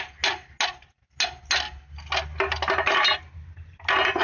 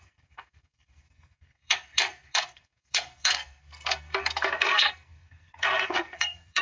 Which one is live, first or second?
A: first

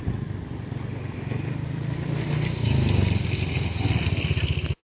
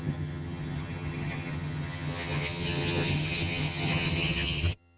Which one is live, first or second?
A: first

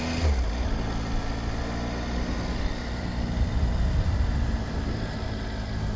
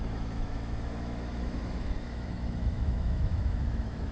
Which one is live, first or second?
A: first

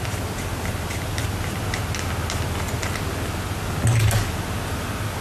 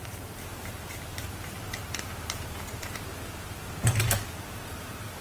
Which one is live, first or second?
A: first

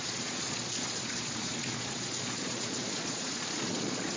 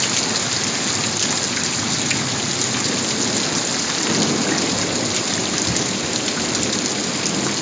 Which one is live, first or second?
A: second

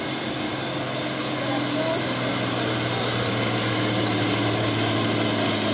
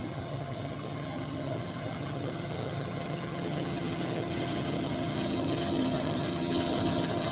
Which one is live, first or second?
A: first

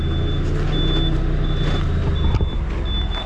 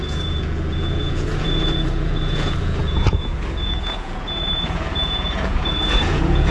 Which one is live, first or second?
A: first